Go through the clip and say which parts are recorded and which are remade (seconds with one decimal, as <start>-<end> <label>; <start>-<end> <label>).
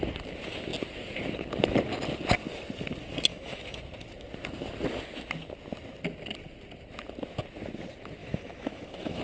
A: 0.0-3.3 recorded; 3.3-3.8 remade; 3.8-8.2 recorded; 8.2-9.2 remade